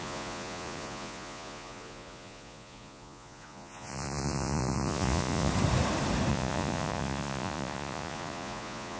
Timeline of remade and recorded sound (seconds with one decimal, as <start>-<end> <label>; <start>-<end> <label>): 0.0-5.5 remade; 5.5-6.3 recorded; 6.3-9.0 remade